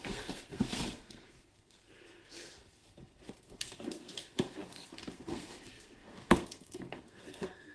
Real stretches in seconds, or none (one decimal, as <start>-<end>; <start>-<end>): none

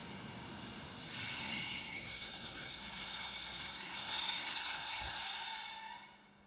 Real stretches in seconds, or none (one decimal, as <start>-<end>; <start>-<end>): 0.0-1.3; 5.2-6.5

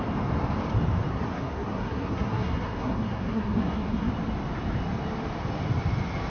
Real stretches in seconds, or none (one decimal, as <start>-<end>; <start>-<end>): 0.0-1.1; 4.1-6.3